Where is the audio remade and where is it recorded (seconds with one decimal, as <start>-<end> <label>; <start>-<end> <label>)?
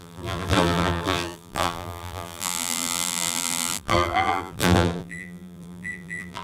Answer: 0.0-6.4 remade